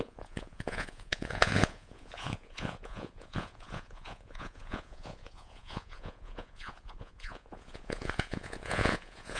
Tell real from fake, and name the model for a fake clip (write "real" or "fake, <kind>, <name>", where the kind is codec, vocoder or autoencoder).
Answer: fake, vocoder, Vocos